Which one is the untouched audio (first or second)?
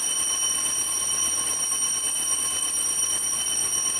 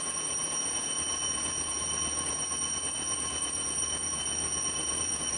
first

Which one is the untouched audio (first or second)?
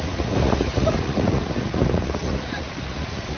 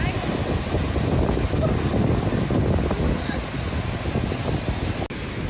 second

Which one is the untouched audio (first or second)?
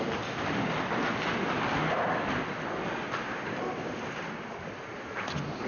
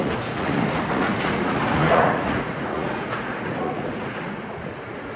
first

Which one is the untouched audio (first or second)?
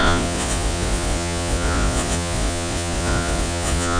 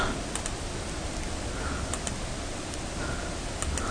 second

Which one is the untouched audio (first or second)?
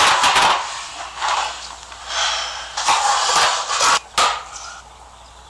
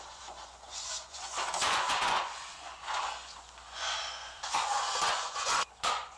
first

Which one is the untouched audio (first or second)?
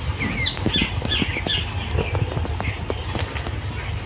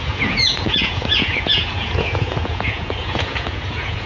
first